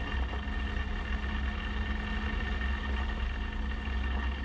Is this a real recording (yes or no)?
yes